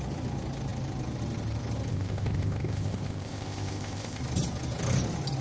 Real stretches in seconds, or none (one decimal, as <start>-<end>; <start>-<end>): 0.0-1.9; 4.2-5.4